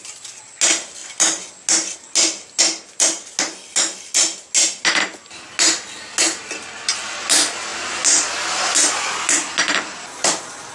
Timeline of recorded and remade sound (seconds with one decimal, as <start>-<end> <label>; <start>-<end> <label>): 0.0-10.7 recorded